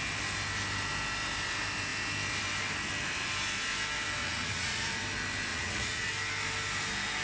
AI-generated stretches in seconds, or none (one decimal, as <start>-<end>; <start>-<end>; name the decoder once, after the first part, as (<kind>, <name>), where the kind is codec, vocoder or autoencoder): 4.2-4.9 (vocoder, Vocos); 5.5-6.1